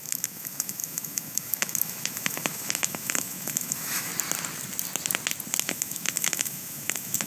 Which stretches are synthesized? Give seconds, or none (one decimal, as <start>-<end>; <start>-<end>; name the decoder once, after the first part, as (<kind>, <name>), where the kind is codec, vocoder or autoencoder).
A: 0.0-4.1 (autoencoder, DAC-VAE); 5.6-7.3